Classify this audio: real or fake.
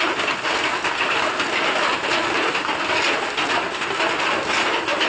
real